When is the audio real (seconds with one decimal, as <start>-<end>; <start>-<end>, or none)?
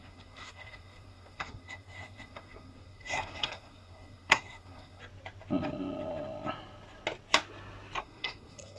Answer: 5.0-8.0